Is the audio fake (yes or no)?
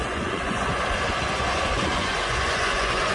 yes